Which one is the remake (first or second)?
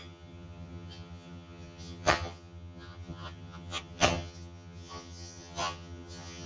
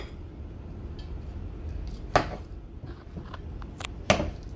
first